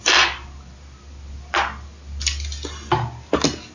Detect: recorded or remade recorded